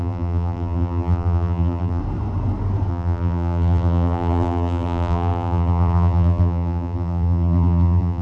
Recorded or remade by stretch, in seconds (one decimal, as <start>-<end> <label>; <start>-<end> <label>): 0.0-2.0 remade; 2.0-2.9 recorded; 2.9-8.2 remade